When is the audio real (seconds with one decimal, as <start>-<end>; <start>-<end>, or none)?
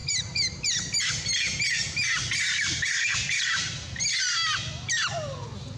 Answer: 0.0-5.8